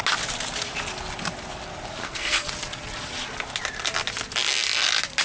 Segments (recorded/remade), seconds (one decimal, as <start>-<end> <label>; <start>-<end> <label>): 0.0-2.0 recorded; 2.0-2.5 remade; 2.5-5.2 recorded